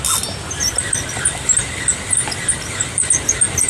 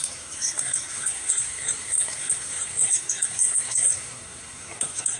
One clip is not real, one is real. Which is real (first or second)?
first